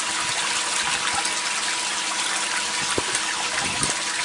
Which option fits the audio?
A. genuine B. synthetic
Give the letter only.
A